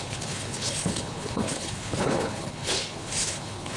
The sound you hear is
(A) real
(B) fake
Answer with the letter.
B